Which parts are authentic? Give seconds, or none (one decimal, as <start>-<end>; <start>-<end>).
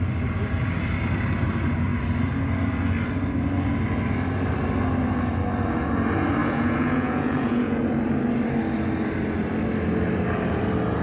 0.0-6.4; 7.8-11.0